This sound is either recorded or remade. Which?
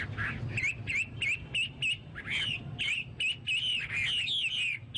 recorded